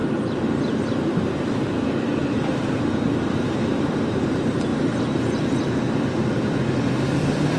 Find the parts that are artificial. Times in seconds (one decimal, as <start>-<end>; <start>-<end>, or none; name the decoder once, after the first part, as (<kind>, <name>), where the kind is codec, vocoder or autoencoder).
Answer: 0.8-7.6 (vocoder, BigVGAN v2)